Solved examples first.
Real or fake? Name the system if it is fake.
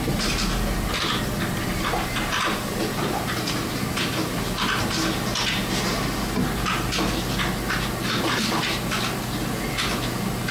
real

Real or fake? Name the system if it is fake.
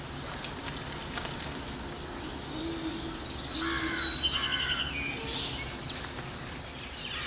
real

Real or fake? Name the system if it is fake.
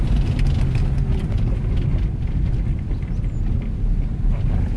real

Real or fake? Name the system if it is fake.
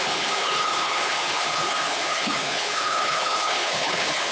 fake, codec, HILCodec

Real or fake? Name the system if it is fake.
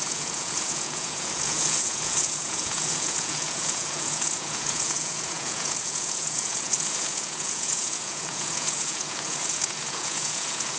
fake, vocoder, Vocos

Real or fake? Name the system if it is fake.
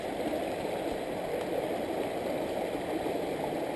real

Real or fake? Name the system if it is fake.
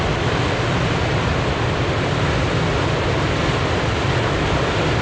real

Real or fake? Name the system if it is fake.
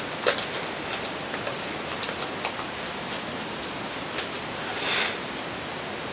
real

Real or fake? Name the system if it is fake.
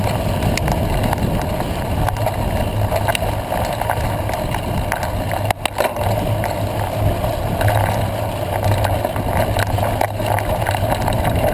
real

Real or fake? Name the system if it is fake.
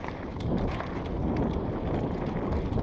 real